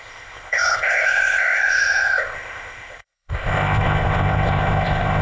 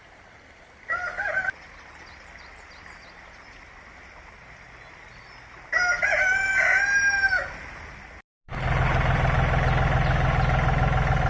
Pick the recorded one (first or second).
second